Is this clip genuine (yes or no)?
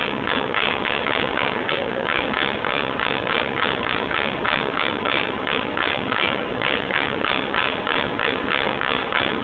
no